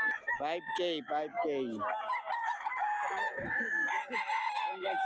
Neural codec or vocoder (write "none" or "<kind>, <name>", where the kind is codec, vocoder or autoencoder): none